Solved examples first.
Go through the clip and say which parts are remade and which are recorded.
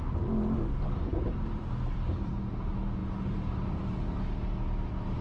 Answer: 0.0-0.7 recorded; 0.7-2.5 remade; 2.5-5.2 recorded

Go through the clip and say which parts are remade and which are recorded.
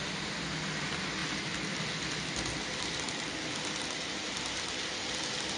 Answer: 0.0-5.6 recorded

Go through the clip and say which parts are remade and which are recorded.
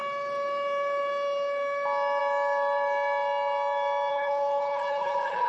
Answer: 0.0-4.1 recorded; 4.1-5.5 remade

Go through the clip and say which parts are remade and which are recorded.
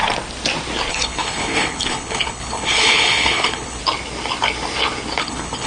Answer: 0.0-0.9 recorded; 0.9-3.8 remade; 3.8-5.2 recorded; 5.2-5.7 remade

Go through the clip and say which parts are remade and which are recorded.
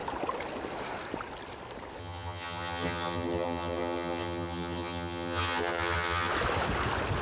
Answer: 0.0-2.0 recorded; 2.0-6.3 remade; 6.3-7.2 recorded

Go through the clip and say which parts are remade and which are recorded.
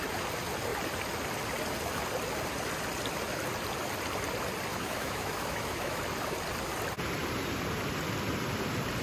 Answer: 0.0-4.7 recorded; 4.7-6.0 remade; 6.0-9.0 recorded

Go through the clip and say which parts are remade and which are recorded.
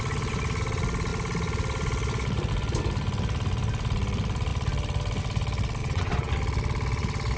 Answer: 0.0-5.8 recorded; 5.8-6.3 remade; 6.3-7.4 recorded